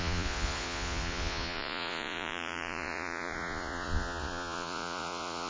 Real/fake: fake